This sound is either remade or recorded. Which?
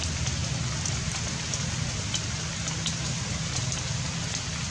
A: recorded